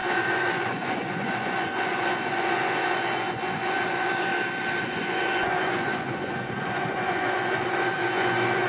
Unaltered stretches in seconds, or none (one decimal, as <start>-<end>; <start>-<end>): 4.3-4.8